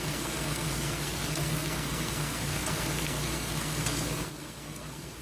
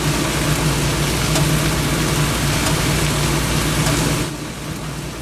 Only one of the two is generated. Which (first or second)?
first